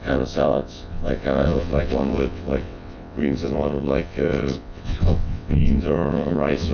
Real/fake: fake